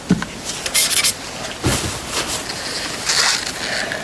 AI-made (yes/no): no